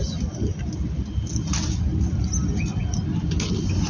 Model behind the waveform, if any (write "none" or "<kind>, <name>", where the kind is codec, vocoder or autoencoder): none